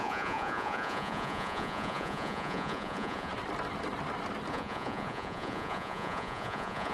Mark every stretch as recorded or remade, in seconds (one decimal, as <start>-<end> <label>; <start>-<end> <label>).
0.0-3.3 remade; 3.3-4.5 recorded; 4.5-6.9 remade